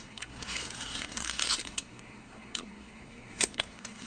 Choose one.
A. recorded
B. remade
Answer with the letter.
B